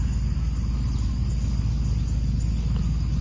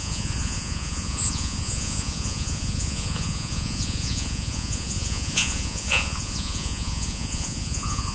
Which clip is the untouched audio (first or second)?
first